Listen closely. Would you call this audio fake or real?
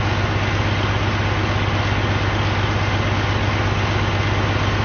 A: real